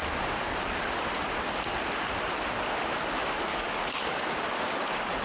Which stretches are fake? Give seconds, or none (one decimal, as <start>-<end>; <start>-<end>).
3.5-4.3